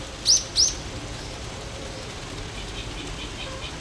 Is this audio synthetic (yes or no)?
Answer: no